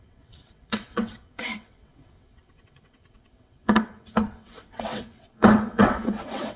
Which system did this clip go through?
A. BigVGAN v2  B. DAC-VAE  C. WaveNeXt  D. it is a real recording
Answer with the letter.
C